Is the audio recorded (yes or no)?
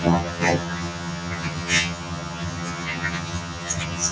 no